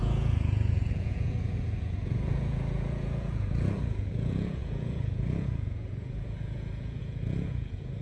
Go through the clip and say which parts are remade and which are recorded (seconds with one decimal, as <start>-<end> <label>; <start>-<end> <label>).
0.0-8.0 remade